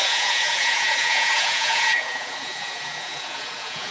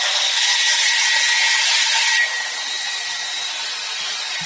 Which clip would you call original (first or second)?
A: second